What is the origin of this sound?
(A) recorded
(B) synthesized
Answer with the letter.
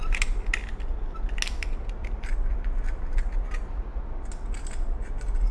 A